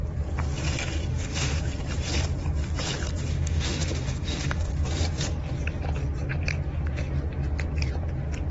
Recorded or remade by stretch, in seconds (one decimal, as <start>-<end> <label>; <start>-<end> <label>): 0.0-1.1 recorded; 1.1-1.6 remade; 1.6-3.3 recorded; 3.3-4.7 remade; 4.7-8.5 recorded

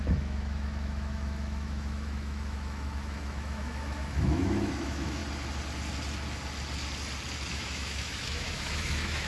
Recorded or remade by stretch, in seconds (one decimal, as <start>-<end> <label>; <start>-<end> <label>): 0.0-5.2 remade; 5.2-7.5 recorded; 7.5-9.3 remade

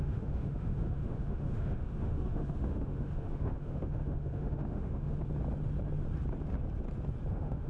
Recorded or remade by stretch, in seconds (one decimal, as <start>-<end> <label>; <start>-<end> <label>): 0.0-5.2 remade; 5.2-7.3 recorded; 7.3-7.7 remade

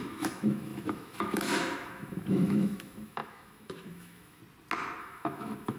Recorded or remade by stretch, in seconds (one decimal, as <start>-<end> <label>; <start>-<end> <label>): 0.0-4.4 remade; 4.4-5.0 recorded; 5.0-5.8 remade

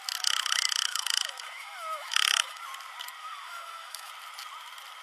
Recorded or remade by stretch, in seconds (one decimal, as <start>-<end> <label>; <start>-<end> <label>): 0.0-0.9 recorded; 0.9-2.6 remade; 2.6-3.2 recorded; 3.2-4.1 remade; 4.1-5.0 recorded

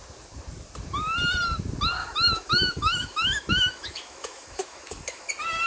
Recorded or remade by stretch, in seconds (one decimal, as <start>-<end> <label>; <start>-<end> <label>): 0.0-2.0 recorded; 2.0-5.3 remade; 5.3-5.7 recorded